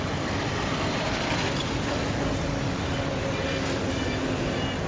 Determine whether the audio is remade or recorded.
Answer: recorded